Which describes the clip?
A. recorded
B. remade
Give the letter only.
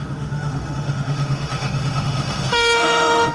B